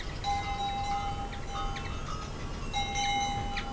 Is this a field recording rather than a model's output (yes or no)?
yes